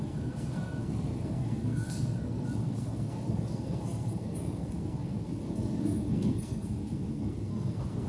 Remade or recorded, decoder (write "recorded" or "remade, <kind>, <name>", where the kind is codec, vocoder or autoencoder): remade, codec, SNAC